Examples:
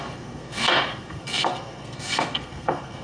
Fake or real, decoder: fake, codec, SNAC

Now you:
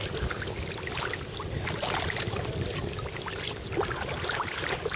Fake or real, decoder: real